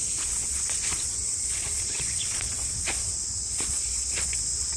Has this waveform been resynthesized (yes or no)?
yes